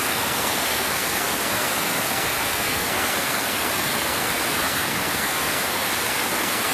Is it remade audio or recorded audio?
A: remade